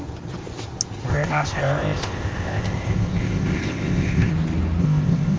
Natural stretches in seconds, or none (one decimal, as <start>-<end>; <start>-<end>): 0.0-1.1; 4.3-4.8